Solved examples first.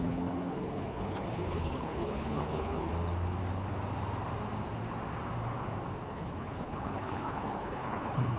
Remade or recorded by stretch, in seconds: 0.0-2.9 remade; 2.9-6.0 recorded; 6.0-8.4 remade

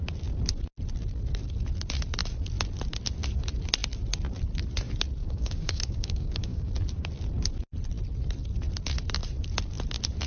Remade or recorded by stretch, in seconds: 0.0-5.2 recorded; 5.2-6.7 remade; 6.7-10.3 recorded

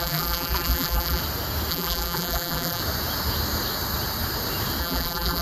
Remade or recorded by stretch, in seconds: 0.0-1.2 remade; 1.2-1.7 recorded; 1.7-2.8 remade; 2.8-4.8 recorded; 4.8-5.4 remade

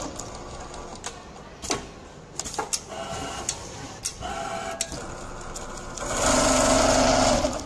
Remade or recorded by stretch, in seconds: 0.0-7.7 recorded

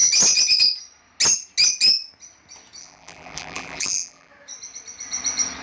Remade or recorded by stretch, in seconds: 0.0-2.8 recorded; 2.8-4.3 remade; 4.3-5.6 recorded